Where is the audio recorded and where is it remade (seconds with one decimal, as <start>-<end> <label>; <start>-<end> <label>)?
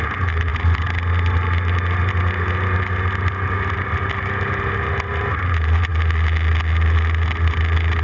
0.0-8.0 recorded